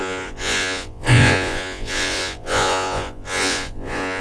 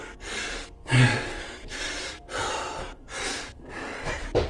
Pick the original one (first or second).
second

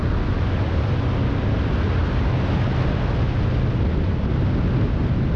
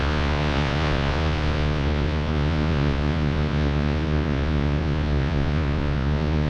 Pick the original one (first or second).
first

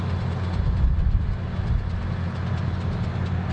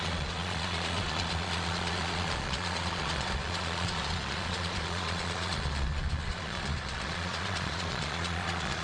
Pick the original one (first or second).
first